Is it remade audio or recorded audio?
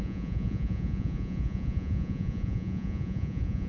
remade